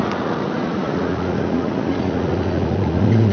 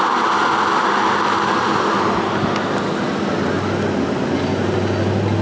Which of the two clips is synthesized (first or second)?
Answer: first